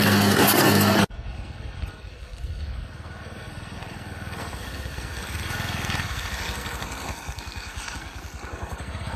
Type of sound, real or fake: fake